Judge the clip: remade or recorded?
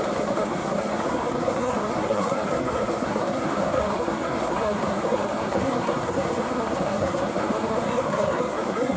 remade